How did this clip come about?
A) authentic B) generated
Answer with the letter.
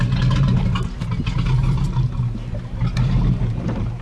A